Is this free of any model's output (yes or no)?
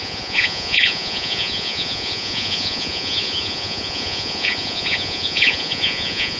no